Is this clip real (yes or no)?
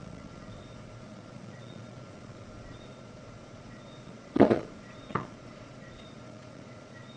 no